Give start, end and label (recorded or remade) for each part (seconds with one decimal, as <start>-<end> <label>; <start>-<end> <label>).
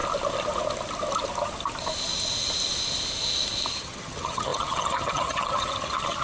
0.0-3.7 recorded; 3.7-6.2 remade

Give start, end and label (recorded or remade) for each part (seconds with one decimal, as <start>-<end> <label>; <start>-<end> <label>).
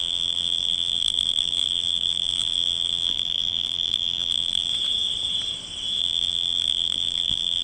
0.0-4.7 remade; 4.7-6.0 recorded; 6.0-7.6 remade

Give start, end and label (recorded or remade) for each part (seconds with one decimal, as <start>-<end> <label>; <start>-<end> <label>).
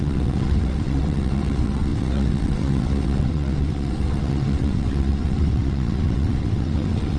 0.0-7.2 remade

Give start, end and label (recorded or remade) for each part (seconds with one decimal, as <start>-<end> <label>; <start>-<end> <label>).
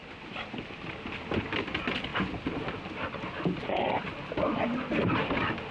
0.0-1.1 remade; 1.1-5.7 recorded